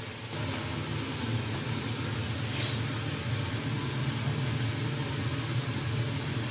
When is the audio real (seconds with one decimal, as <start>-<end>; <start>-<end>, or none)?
0.0-6.5